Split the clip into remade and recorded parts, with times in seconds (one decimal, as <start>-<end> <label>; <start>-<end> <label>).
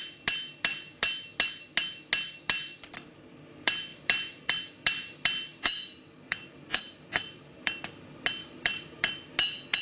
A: 0.0-5.5 recorded; 5.5-7.8 remade; 7.8-8.4 recorded; 8.4-9.1 remade; 9.1-9.8 recorded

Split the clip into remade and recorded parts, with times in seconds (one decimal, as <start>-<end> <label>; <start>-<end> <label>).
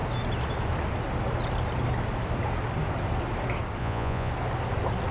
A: 0.0-3.8 recorded; 3.8-4.3 remade; 4.3-5.1 recorded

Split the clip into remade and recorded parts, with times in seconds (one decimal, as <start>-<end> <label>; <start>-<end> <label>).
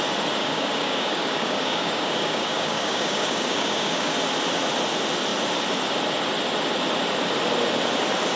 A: 0.0-0.4 recorded; 0.4-4.1 remade; 4.1-8.4 recorded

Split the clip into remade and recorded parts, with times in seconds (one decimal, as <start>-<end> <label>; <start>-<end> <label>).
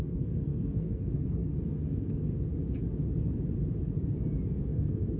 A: 0.0-2.3 remade; 2.3-4.6 recorded; 4.6-5.2 remade